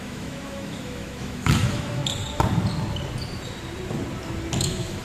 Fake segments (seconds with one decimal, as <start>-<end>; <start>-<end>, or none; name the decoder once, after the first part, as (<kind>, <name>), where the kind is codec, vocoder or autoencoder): 0.0-2.0 (autoencoder, DAC-VAE); 4.6-5.0